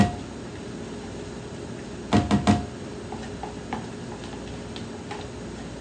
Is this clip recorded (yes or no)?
yes